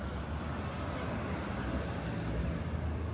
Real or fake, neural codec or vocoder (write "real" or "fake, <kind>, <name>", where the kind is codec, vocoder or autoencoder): real